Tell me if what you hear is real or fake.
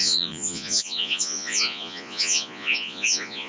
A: fake